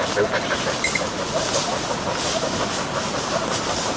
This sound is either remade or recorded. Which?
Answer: recorded